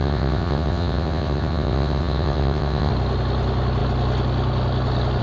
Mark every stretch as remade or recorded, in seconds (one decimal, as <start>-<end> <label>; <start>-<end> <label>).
0.0-2.9 remade; 2.9-5.2 recorded

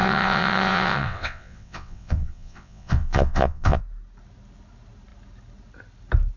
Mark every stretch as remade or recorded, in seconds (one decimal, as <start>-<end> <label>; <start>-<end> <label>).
0.0-3.8 remade; 3.8-6.4 recorded

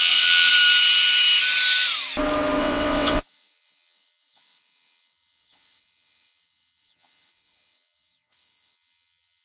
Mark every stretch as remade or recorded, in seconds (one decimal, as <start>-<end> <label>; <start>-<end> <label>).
0.0-0.5 remade; 0.5-2.6 recorded; 2.6-9.4 remade